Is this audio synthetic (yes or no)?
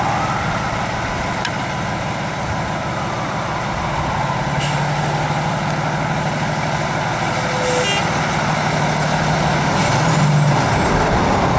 no